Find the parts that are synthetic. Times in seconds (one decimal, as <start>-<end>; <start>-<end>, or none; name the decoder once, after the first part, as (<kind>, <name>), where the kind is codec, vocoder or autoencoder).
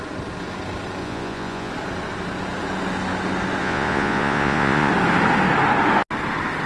1.0-1.7 (vocoder, Vocos); 3.6-4.9